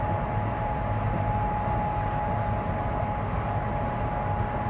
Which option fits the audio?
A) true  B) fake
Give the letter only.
A